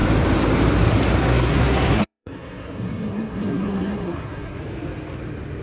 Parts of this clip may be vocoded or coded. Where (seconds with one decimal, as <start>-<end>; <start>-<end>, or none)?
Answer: 1.2-4.6